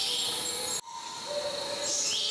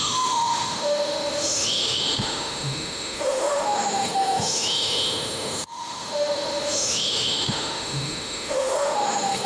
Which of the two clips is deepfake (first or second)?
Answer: second